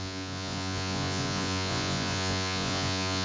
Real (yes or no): no